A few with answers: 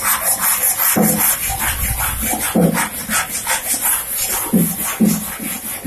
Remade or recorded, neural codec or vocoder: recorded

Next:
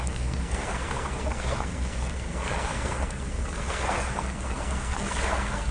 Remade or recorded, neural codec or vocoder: remade, codec, SNAC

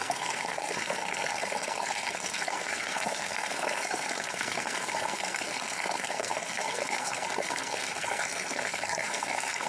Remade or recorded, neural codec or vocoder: remade, codec, SNAC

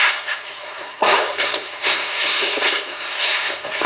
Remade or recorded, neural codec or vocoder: remade, codec, SNAC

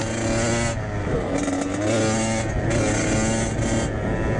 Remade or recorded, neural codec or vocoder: recorded